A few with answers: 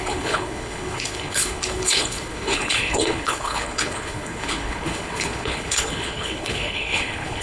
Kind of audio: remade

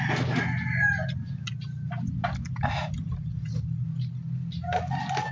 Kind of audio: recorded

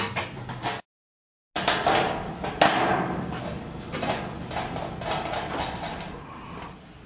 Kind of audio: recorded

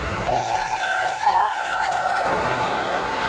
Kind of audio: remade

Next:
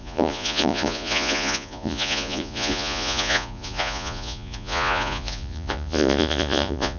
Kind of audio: remade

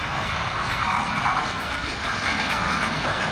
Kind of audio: remade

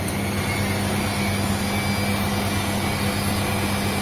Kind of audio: recorded